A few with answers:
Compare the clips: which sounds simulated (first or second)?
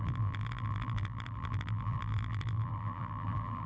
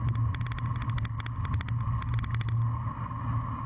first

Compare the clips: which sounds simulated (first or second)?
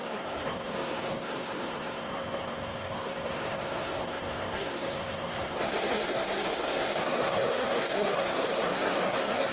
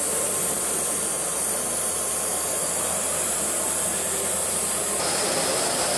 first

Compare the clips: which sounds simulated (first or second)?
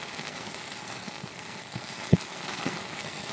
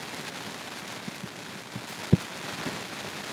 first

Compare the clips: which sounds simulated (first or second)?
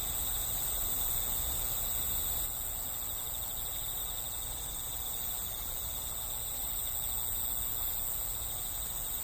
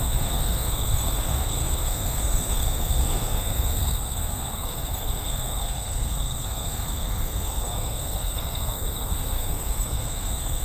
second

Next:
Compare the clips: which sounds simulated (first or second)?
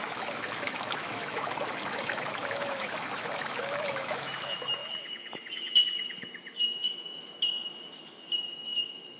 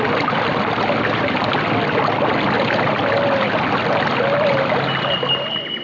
first